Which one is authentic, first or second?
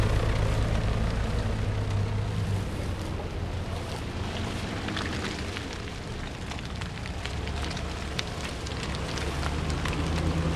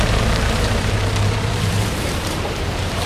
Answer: first